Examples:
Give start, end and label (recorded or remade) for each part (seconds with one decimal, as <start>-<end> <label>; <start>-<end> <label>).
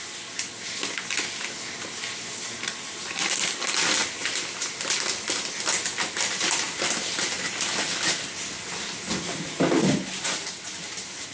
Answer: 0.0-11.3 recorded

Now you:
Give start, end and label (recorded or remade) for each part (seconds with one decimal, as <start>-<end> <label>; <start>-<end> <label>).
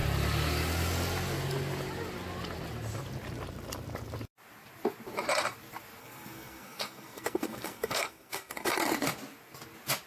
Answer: 0.0-6.0 recorded; 6.0-8.7 remade; 8.7-10.1 recorded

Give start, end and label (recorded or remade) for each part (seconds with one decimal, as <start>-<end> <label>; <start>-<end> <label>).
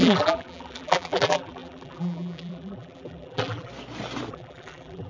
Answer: 0.0-3.7 remade; 3.7-4.3 recorded; 4.3-5.1 remade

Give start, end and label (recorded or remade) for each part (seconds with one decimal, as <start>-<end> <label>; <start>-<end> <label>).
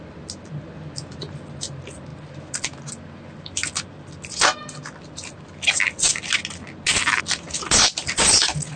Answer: 0.0-8.8 recorded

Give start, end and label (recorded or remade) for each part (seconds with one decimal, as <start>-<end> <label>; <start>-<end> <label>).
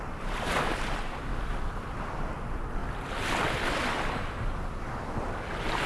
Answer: 0.0-2.8 remade; 2.8-5.2 recorded; 5.2-5.9 remade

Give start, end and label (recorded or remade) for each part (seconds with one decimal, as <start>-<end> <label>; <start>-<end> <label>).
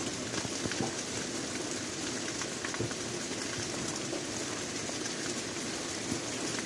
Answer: 0.0-6.7 recorded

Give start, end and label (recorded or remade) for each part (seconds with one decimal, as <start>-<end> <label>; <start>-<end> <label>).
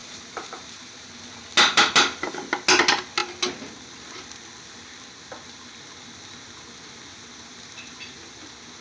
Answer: 0.0-1.1 remade; 1.1-7.1 recorded; 7.1-8.4 remade; 8.4-8.8 recorded